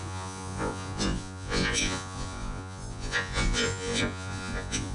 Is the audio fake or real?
fake